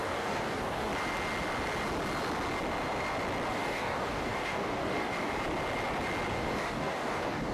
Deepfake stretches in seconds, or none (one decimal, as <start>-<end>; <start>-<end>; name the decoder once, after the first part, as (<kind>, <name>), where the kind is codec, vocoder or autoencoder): 0.0-0.9 (codec, DAC); 3.5-5.3; 6.3-7.5